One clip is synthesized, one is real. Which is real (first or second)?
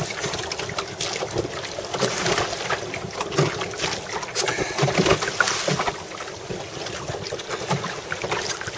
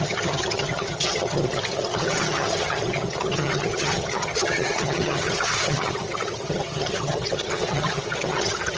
first